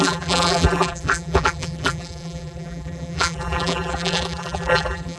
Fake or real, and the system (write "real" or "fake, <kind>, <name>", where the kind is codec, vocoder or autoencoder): fake, vocoder, BigVGAN v2